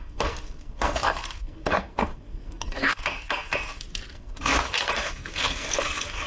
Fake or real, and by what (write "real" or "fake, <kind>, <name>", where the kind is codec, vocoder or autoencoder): fake, codec, SNAC